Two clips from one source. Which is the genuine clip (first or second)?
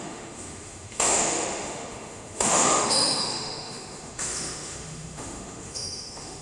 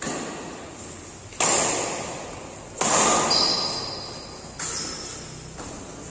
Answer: second